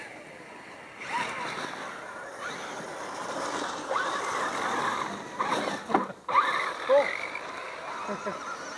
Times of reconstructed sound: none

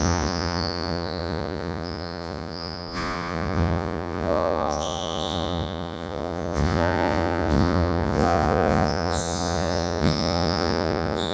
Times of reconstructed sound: 0.0-11.3 (vocoder, Vocos)

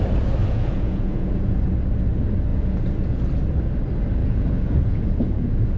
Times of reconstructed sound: 0.4-1.6 (vocoder, Vocos); 2.5-3.2; 4.2-5.8

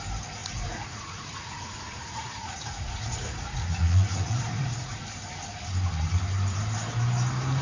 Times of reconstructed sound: 0.4-5.0 (vocoder, Vocos)

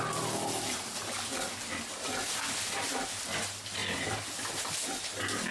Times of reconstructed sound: none

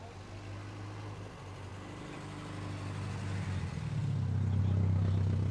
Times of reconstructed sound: none